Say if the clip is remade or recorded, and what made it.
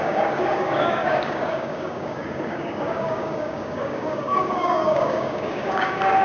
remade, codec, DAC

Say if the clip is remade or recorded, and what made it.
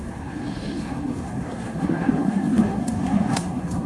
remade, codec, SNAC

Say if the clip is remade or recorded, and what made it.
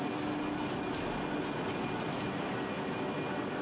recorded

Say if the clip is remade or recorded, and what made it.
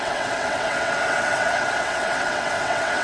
remade, vocoder, WaveNeXt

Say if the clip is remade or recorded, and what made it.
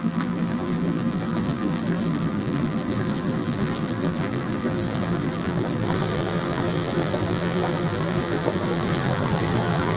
remade, vocoder, BigVGAN v2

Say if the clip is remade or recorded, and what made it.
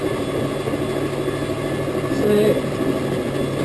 recorded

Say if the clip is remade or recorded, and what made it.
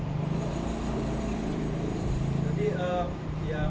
remade, vocoder, BigVGAN v2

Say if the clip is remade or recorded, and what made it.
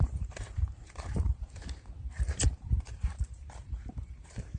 remade, vocoder, BigVGAN v2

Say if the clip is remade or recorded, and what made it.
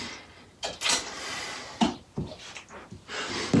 recorded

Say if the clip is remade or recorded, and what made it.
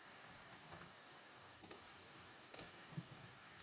remade, codec, DAC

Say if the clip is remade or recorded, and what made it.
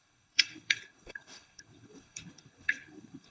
remade, codec, HILCodec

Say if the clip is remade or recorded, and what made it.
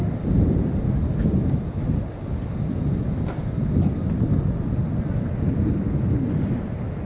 recorded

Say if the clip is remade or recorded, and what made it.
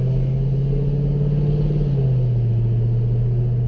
recorded